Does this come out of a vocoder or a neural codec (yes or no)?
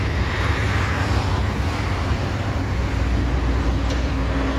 no